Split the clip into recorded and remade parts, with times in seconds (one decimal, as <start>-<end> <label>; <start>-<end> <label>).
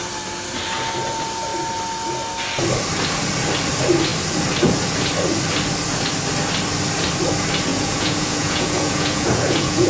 0.0-7.7 recorded; 7.7-9.9 remade